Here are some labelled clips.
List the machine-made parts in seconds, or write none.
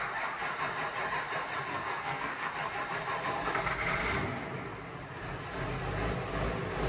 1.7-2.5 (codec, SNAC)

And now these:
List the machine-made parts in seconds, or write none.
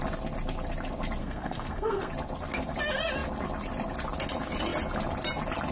1.2-2.1 (codec, SNAC)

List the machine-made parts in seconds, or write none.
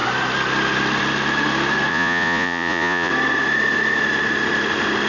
1.9-3.1 (vocoder, Vocos)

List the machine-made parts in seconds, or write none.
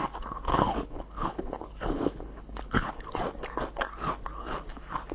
0.5-2.9 (codec, HILCodec)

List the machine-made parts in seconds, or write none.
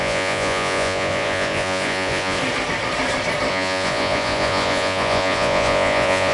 0.0-2.4 (vocoder, Vocos); 3.5-6.3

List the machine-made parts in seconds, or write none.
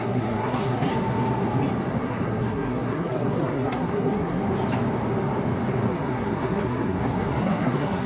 0.0-0.9 (codec, SNAC); 2.0-4.4; 5.9-8.1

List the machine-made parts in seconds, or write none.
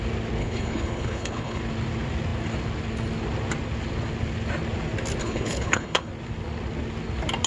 0.4-1.6 (codec, HILCodec); 5.2-6.1